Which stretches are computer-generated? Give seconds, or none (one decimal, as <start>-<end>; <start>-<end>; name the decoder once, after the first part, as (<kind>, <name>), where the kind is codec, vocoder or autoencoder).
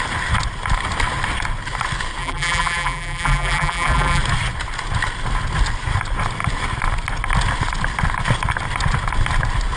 2.2-4.2 (vocoder, BigVGAN v2)